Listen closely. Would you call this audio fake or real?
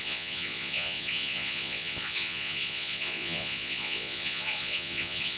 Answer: fake